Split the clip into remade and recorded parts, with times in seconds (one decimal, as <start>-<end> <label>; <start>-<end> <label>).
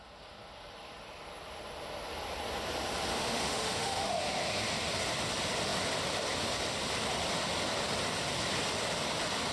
0.0-3.1 recorded; 3.1-4.1 remade; 4.1-9.5 recorded